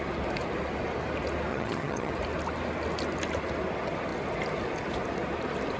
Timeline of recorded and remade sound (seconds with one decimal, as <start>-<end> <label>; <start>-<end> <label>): 0.0-1.5 recorded; 1.5-2.1 remade; 2.1-5.8 recorded